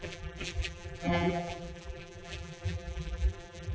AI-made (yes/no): yes